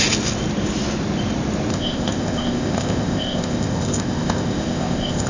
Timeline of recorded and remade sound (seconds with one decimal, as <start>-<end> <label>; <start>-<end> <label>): 0.0-1.7 recorded; 1.7-5.3 remade